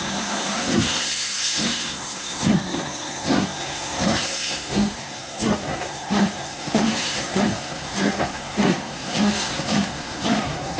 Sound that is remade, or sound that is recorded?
remade